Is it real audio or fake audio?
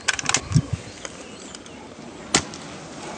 real